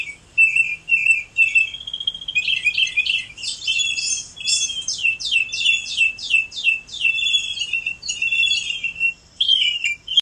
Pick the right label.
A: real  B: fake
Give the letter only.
B